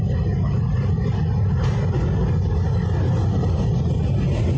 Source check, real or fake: real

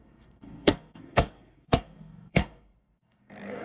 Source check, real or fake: fake